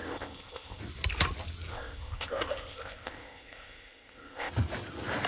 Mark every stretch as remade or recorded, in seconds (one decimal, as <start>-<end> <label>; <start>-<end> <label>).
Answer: 0.0-0.8 remade; 0.8-1.7 recorded; 1.7-4.5 remade; 4.5-5.3 recorded